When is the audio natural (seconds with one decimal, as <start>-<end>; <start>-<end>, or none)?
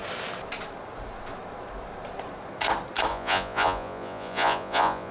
0.0-3.1